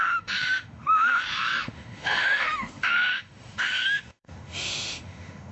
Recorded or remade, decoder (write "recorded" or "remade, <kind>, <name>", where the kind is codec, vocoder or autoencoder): remade, autoencoder, DAC-VAE